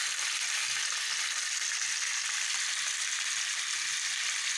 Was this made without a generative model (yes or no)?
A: yes